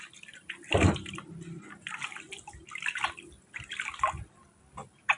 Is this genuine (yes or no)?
yes